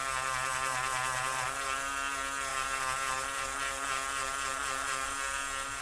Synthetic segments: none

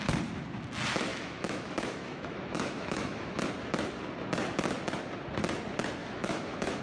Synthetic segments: 1.1-3.4 (autoencoder, DAC-VAE); 6.0-6.8

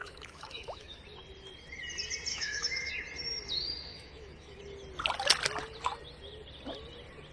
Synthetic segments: 0.0-1.0 (autoencoder, DAC-VAE); 2.3-2.9; 3.9-4.6